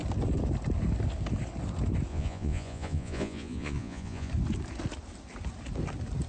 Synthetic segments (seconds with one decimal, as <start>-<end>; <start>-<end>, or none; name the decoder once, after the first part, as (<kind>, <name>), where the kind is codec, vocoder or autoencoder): 2.1-4.3 (vocoder, Vocos)